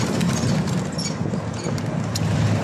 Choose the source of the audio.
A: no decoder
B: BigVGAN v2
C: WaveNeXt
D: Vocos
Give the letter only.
A